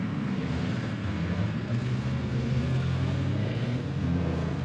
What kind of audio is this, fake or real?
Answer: fake